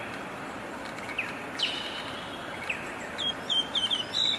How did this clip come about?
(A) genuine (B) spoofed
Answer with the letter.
A